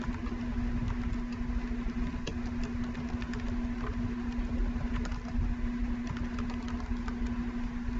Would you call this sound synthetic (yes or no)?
no